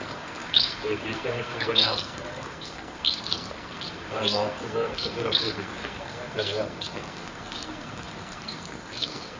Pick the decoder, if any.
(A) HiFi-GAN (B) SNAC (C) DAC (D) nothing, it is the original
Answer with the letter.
B